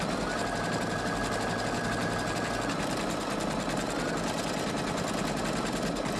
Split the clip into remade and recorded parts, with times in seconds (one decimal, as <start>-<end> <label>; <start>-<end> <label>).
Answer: 0.0-6.2 recorded